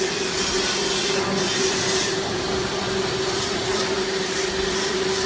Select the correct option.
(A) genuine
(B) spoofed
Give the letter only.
B